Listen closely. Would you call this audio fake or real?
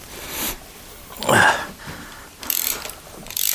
fake